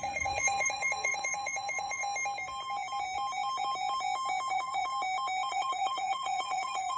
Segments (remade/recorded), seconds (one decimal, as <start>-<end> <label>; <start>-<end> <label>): 0.0-2.0 remade; 2.0-4.5 recorded; 4.5-4.9 remade; 4.9-5.5 recorded; 5.5-7.0 remade